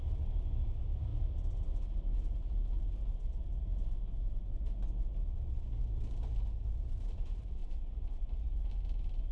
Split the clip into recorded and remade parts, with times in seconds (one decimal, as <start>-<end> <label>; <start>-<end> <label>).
0.0-1.1 remade; 1.1-2.0 recorded; 2.0-3.5 remade; 3.5-5.8 recorded; 5.8-9.3 remade